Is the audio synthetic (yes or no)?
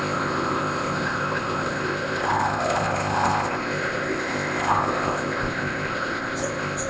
yes